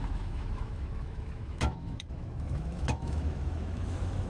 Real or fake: fake